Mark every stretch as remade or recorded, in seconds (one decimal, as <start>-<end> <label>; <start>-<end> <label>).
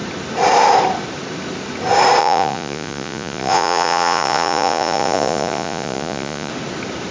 0.0-2.2 recorded; 2.2-6.5 remade; 6.5-7.1 recorded